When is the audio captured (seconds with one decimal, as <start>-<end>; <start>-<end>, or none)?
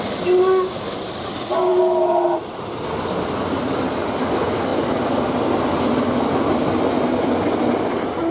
0.0-8.3